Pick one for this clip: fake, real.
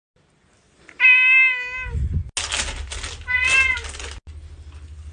real